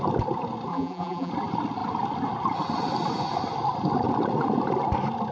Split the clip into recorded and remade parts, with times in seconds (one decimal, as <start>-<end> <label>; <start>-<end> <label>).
0.0-0.7 recorded; 0.7-1.3 remade; 1.3-5.3 recorded